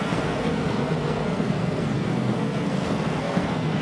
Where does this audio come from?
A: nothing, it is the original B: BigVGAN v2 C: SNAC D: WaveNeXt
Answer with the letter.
C